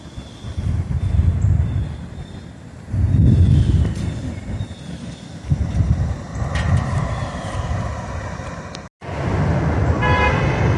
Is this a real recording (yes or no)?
yes